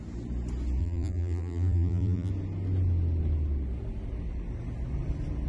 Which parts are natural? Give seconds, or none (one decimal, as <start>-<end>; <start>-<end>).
0.0-0.8; 2.3-5.5